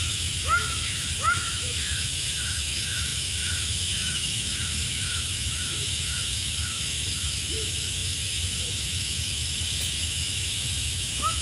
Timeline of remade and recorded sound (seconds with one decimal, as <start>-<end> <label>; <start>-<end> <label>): 0.0-11.4 remade